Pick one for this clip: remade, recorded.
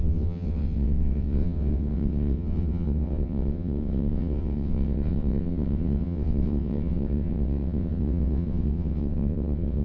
remade